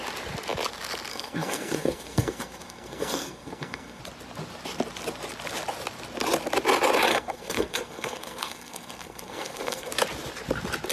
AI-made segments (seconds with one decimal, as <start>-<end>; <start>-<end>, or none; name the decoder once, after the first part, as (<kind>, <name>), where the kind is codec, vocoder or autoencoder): 1.1-4.0 (codec, SNAC); 7.1-9.9